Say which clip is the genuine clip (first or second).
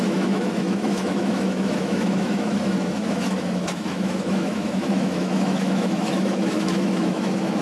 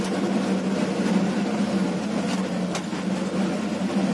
second